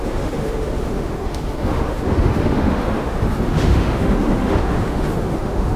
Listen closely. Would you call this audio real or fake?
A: fake